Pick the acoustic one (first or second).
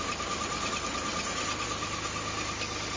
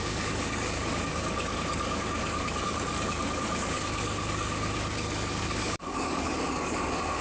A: first